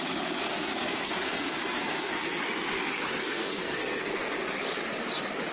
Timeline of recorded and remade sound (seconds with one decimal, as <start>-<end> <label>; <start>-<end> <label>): 0.0-0.5 recorded; 0.5-2.4 remade; 2.4-3.2 recorded; 3.2-4.3 remade; 4.3-5.5 recorded

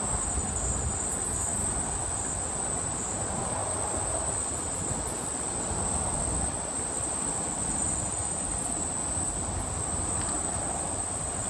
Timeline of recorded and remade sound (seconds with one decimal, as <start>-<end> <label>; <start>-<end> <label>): 0.0-11.5 recorded

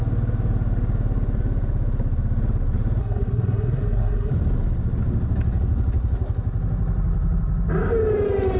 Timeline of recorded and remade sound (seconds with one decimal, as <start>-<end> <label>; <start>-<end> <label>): 0.0-3.0 recorded; 3.0-4.3 remade; 4.3-8.6 recorded

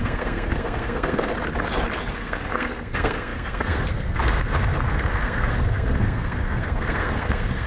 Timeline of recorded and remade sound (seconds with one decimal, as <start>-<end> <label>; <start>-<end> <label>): 0.0-1.3 remade; 1.3-2.1 recorded; 2.1-7.7 remade

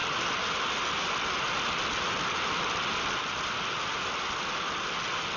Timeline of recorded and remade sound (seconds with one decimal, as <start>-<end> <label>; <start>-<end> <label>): 0.0-5.4 recorded

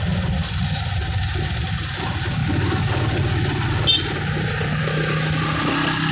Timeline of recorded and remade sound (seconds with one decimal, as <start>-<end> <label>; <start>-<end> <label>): 0.0-2.4 recorded; 2.4-3.2 remade; 3.2-6.1 recorded

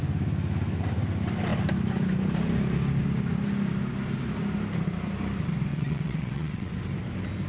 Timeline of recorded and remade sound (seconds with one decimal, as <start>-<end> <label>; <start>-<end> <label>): 0.0-5.7 recorded; 5.7-6.7 remade; 6.7-7.5 recorded

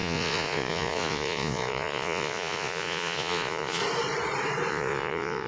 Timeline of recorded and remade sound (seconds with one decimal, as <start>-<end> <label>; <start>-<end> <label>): 0.0-3.8 remade; 3.8-4.7 recorded; 4.7-5.5 remade